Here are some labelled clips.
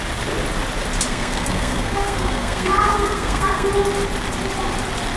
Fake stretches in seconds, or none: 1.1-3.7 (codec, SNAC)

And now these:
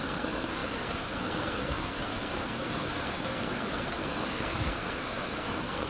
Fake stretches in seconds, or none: 0.0-5.9 (codec, SNAC)

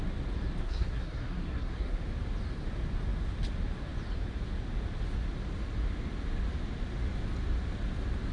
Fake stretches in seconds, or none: 0.6-2.0 (codec, SNAC)

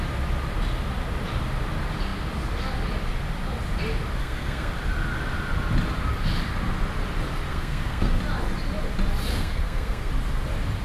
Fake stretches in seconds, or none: 4.2-4.7 (codec, SNAC); 7.5-8.2; 9.3-10.1